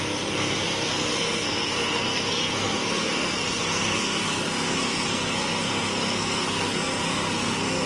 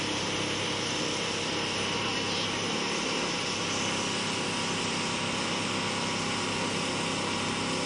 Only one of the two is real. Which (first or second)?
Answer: second